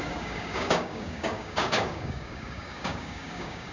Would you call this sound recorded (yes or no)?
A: no